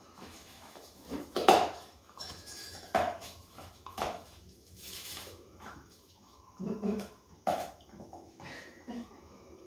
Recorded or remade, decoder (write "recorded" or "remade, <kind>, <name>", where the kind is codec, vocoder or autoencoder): remade, autoencoder, DAC-VAE